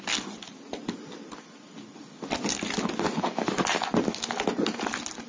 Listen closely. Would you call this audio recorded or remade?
recorded